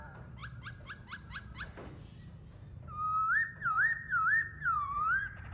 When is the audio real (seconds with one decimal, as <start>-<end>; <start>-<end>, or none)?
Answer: 0.4-3.7